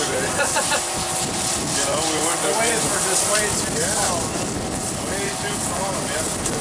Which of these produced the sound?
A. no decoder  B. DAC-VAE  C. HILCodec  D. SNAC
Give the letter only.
A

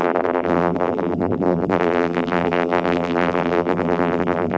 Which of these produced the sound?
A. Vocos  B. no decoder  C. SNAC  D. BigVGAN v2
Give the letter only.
D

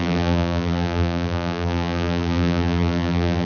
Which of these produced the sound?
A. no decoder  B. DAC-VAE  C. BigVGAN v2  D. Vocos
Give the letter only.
C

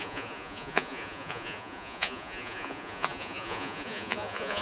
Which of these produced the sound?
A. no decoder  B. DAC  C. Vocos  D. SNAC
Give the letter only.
C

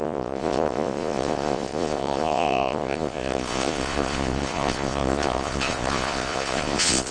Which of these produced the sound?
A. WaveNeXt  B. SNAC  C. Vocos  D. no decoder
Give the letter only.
C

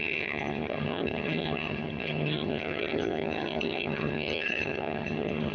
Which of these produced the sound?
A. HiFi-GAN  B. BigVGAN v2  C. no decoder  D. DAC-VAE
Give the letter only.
A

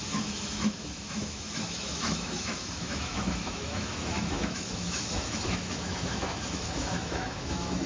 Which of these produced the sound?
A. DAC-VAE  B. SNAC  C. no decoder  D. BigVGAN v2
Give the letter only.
A